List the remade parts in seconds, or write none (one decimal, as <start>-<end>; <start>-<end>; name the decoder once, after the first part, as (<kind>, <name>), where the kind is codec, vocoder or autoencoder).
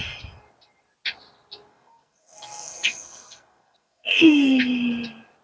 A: 1.7-4.6 (codec, SNAC)